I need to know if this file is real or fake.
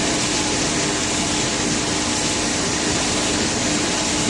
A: real